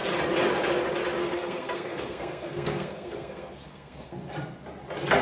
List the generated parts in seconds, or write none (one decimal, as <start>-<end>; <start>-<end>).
1.2-4.3